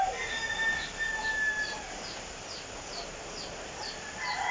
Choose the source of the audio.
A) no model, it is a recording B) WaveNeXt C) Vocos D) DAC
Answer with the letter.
A